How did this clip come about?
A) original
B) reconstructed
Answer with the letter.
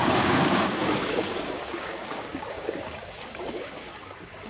B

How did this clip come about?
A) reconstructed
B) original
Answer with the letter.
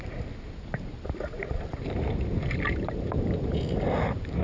B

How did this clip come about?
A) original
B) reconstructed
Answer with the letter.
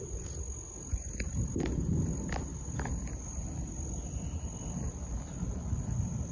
A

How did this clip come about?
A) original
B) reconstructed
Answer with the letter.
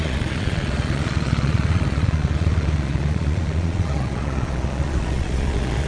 B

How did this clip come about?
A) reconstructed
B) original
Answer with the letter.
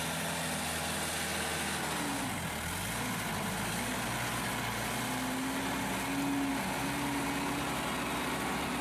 B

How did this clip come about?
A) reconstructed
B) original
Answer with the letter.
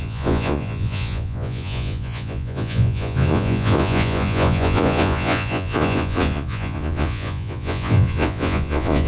A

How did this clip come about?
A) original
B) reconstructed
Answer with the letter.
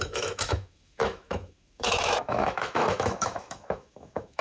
B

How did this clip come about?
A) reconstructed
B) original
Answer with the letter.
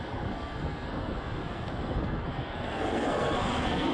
A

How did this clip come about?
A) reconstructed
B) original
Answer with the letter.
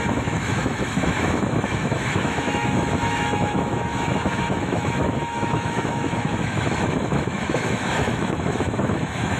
A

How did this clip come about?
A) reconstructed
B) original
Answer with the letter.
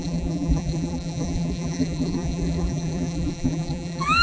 A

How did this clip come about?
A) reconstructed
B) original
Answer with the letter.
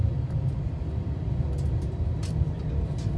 B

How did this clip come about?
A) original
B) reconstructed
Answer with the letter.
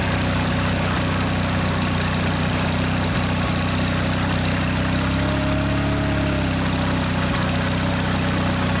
A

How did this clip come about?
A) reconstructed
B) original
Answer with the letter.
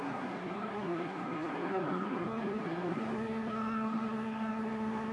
A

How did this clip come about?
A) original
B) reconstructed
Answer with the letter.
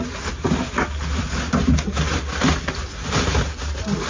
A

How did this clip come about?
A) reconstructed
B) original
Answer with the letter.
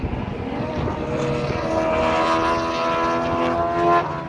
B